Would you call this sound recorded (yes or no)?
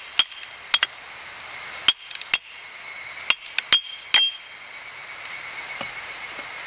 yes